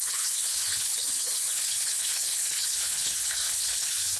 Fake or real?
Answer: fake